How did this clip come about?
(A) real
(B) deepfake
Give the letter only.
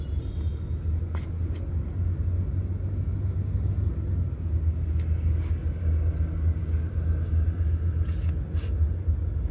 A